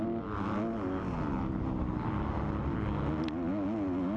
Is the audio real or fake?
real